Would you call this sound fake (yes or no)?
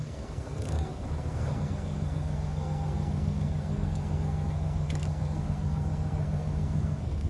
yes